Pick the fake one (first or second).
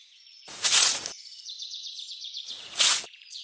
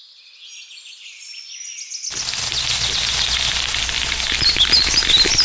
first